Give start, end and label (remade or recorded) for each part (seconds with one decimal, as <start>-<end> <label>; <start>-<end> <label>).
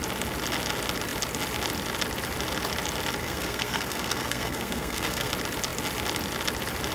0.0-3.2 recorded; 3.2-5.3 remade; 5.3-6.9 recorded